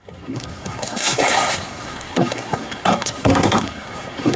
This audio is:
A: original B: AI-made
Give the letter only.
B